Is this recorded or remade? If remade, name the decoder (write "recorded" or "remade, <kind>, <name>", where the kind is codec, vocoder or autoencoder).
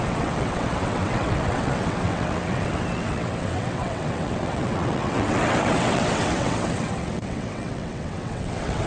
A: remade, vocoder, WaveNeXt